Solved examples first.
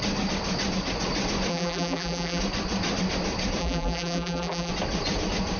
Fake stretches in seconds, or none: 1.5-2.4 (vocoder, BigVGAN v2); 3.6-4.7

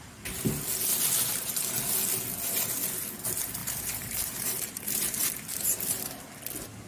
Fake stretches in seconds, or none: 0.9-1.7 (vocoder, BigVGAN v2); 3.6-5.3

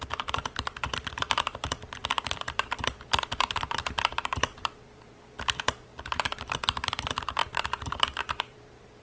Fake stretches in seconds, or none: 0.0-9.0 (vocoder, BigVGAN v2)

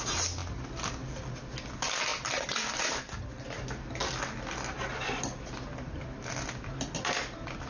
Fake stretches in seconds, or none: 2.1-2.7 (vocoder, BigVGAN v2)

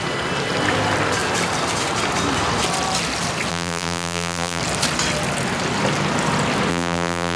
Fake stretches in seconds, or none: 3.5-4.6 (vocoder, BigVGAN v2); 6.7-7.4

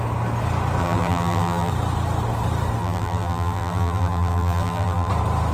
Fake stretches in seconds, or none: 0.8-1.7 (vocoder, BigVGAN v2); 2.8-5.1

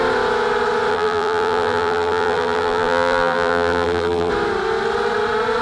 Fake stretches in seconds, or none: 0.9-4.3 (vocoder, BigVGAN v2)

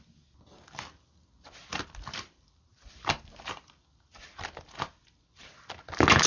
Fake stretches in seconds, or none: 1.7-4.1 (vocoder, BigVGAN v2)